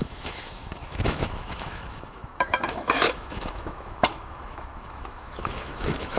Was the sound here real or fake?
fake